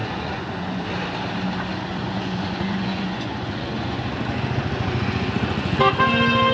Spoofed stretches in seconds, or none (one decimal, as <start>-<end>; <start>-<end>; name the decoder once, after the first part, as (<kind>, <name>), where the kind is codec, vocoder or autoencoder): 0.0-0.8 (vocoder, Vocos); 1.9-5.8